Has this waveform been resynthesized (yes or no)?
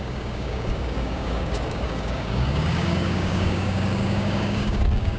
yes